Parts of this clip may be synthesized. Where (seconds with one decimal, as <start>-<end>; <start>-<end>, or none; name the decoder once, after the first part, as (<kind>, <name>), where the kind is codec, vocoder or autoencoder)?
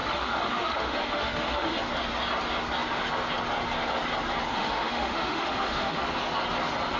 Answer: 0.0-1.8 (autoencoder, DAC-VAE); 4.5-6.0